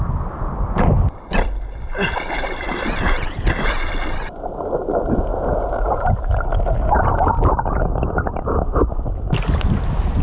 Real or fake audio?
real